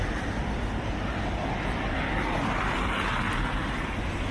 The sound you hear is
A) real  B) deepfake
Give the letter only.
A